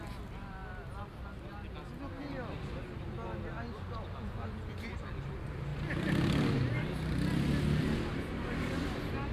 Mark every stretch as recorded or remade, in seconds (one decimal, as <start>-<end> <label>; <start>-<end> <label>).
0.0-9.3 recorded